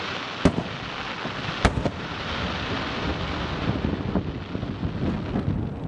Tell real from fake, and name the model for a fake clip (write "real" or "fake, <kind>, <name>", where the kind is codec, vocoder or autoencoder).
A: real